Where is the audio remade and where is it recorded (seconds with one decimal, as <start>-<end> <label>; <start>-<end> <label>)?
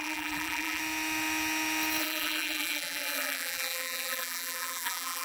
0.0-0.8 remade; 0.8-2.0 recorded; 2.0-5.2 remade